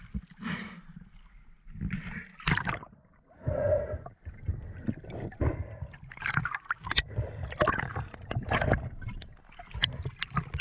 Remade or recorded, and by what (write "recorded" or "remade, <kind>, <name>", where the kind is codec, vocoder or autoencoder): recorded